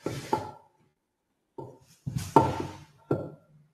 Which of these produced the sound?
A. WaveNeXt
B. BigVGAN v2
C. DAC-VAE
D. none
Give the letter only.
B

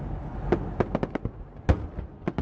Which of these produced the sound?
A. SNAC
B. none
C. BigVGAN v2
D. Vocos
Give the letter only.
B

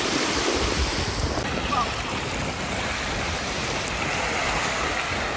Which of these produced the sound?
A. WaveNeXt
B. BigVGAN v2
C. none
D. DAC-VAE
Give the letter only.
C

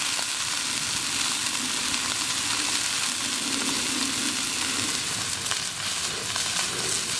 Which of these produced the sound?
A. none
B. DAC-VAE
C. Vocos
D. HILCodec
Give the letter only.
A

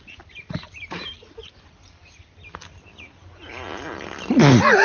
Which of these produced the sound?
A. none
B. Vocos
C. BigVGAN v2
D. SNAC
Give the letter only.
A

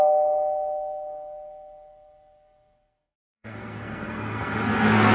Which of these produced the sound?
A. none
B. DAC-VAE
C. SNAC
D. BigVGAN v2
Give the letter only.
C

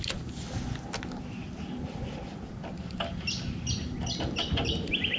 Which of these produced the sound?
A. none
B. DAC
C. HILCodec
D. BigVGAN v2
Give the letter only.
A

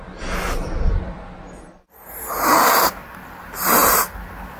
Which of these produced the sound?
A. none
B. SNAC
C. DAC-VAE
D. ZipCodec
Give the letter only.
A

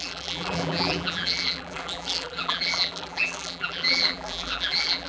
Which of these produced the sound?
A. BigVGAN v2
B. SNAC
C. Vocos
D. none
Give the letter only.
A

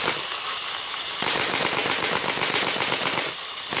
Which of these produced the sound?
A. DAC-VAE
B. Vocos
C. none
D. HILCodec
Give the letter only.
C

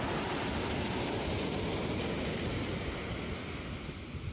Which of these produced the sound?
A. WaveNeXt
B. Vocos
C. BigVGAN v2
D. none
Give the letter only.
D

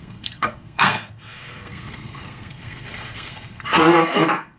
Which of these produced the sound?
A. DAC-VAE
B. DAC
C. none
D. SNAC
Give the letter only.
D